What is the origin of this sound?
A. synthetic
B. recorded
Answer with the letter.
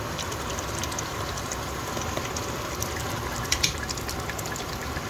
B